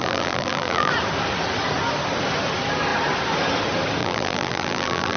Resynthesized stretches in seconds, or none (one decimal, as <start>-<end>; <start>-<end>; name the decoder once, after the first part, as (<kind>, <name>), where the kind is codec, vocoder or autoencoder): 0.0-0.9 (vocoder, BigVGAN v2); 4.0-5.2